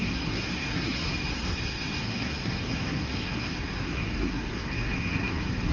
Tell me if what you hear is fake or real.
fake